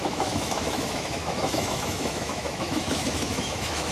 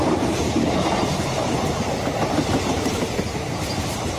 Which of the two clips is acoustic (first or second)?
second